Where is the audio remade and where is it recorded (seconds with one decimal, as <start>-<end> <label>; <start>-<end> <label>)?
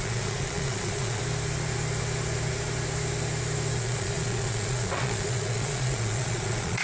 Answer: 0.0-1.2 remade; 1.2-3.8 recorded; 3.8-6.8 remade